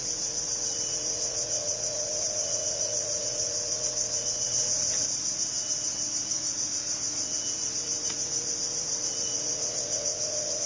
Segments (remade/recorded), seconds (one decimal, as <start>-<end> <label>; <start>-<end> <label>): 0.0-10.7 remade